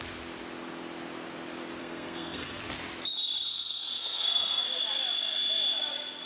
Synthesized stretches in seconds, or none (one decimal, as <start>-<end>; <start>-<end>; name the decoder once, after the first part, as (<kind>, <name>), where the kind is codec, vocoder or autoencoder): 1.8-2.6 (codec, SNAC); 3.5-4.6